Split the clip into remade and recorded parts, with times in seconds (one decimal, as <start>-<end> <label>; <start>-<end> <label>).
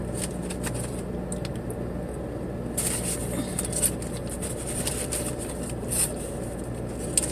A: 0.0-4.2 recorded; 4.2-6.6 remade; 6.6-7.3 recorded